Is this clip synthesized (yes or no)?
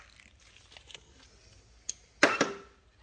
no